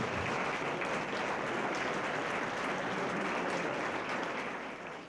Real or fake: real